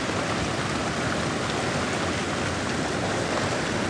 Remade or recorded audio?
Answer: recorded